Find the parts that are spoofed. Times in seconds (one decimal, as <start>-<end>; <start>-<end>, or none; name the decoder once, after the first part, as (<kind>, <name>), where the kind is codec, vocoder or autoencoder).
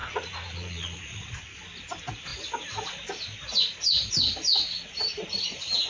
0.0-1.6 (vocoder, Vocos)